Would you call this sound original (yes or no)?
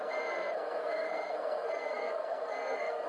no